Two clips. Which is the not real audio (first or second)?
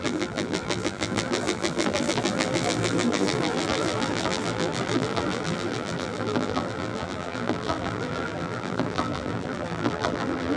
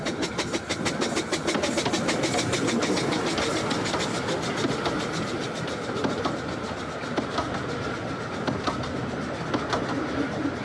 first